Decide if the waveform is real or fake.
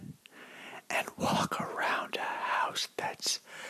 real